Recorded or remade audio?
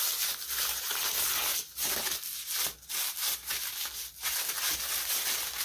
recorded